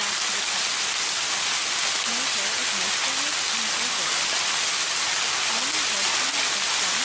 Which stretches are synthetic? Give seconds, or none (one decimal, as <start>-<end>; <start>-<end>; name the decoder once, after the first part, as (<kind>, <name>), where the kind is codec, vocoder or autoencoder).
none